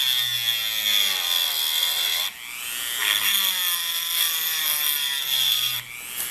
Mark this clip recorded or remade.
recorded